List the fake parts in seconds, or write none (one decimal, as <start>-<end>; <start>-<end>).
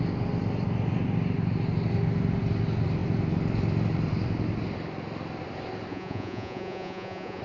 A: 5.9-7.4